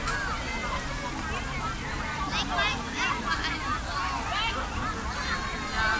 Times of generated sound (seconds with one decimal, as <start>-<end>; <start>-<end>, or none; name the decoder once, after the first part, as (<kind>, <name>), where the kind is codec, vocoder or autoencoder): none